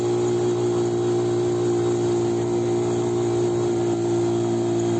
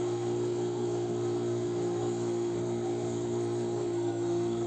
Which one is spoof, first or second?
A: second